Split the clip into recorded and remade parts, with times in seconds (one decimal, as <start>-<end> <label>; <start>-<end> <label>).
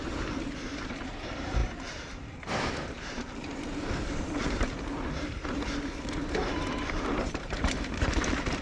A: 0.0-6.2 remade; 6.2-6.8 recorded; 6.8-8.6 remade